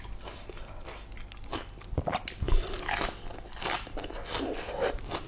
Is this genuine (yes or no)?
yes